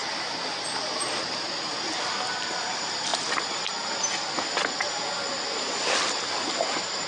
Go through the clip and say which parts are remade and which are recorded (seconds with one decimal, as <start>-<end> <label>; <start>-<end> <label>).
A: 0.0-1.2 recorded; 1.2-1.7 remade; 1.7-2.3 recorded; 2.3-3.1 remade; 3.1-6.6 recorded; 6.6-7.1 remade